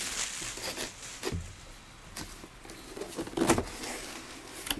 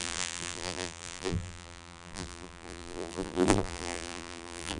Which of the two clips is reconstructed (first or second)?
second